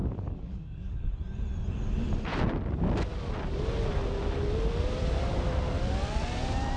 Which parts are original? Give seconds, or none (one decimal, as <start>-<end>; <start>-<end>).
1.0-6.8